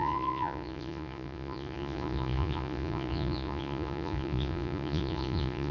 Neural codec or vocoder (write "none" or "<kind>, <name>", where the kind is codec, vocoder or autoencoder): vocoder, Vocos